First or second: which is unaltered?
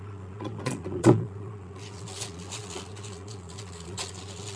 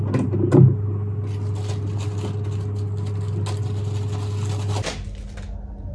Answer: second